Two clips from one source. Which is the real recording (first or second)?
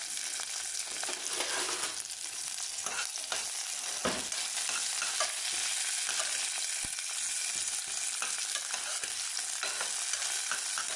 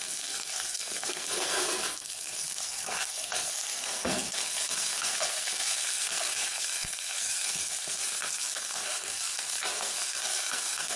first